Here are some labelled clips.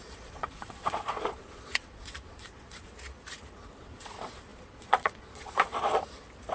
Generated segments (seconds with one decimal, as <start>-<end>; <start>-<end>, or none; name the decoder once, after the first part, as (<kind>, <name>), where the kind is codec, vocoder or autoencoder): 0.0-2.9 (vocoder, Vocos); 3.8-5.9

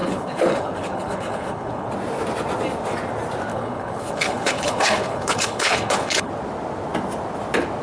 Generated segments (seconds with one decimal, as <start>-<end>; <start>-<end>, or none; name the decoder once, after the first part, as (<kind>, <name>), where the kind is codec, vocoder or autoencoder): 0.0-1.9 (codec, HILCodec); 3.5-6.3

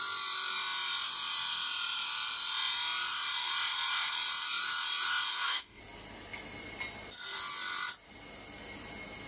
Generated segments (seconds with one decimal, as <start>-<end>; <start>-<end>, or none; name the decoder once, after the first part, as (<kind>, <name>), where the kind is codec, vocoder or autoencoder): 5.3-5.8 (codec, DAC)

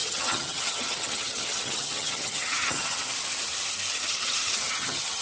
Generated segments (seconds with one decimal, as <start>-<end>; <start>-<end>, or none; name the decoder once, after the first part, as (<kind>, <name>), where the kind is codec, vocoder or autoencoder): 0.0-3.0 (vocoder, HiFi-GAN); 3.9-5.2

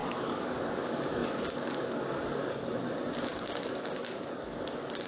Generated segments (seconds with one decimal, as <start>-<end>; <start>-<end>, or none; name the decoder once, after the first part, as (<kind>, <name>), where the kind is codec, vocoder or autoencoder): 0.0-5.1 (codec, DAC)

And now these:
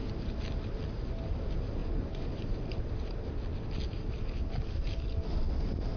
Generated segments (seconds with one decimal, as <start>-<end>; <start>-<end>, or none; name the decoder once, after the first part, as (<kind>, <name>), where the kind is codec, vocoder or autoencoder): 1.8-2.3 (vocoder, Vocos)